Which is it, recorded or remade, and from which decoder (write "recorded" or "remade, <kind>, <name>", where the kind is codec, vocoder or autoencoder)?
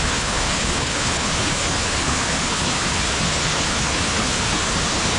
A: remade, codec, HILCodec